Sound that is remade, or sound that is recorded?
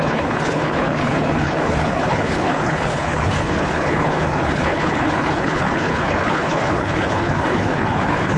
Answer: remade